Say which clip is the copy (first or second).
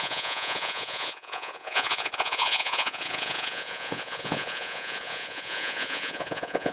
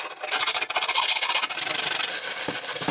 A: first